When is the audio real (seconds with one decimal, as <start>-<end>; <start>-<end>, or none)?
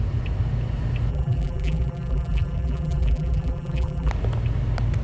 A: 0.0-1.1; 4.1-5.0